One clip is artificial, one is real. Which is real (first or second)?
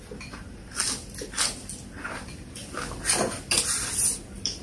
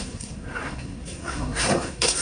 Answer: first